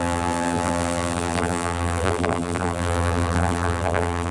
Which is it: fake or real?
fake